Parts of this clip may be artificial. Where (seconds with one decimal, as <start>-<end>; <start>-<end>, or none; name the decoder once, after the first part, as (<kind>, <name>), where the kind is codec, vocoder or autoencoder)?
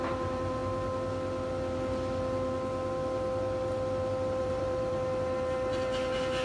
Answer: 0.0-0.6 (vocoder, BigVGAN v2); 4.4-6.4